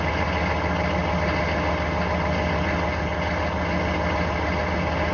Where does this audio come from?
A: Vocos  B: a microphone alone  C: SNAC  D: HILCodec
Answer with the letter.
B